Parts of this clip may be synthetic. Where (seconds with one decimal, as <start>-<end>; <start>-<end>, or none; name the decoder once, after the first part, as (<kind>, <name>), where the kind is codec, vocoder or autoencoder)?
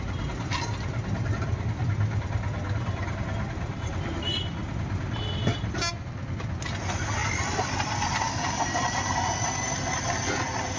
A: none